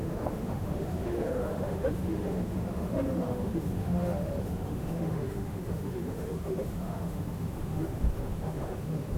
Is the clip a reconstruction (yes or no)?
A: yes